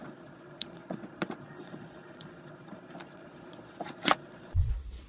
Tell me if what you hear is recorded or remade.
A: remade